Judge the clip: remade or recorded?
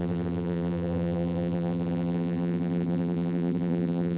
remade